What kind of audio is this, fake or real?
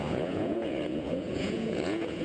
fake